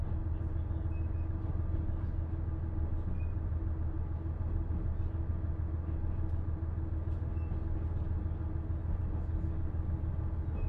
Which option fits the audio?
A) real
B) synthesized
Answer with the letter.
A